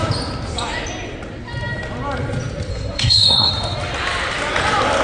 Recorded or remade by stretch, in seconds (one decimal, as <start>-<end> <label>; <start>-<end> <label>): 0.0-2.7 recorded; 2.7-3.5 remade; 3.5-5.0 recorded